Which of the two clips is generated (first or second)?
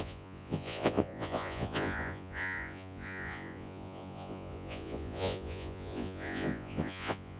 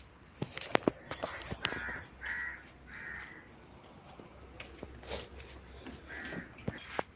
first